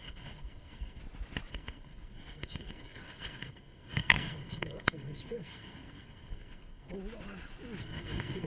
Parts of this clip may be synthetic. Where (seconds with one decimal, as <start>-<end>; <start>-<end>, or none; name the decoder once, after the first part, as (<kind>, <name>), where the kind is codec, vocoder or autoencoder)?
0.0-1.0 (codec, SNAC); 1.5-7.0; 7.8-8.5